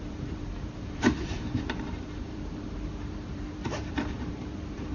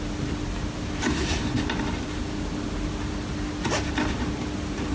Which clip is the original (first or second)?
second